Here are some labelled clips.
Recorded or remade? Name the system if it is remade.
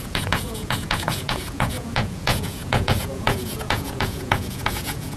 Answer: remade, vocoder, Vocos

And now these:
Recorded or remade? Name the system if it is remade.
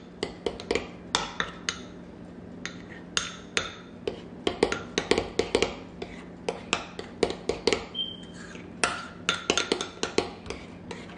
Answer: recorded